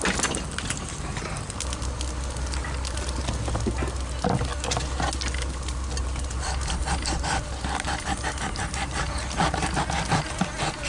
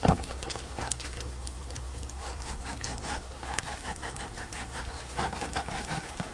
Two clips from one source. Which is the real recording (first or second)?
first